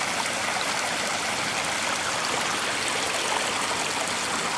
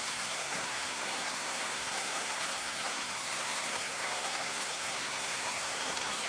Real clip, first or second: first